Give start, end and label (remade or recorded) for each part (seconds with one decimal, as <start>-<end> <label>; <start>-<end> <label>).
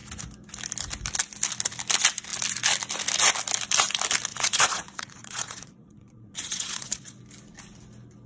0.0-4.3 recorded; 4.3-7.2 remade; 7.2-8.3 recorded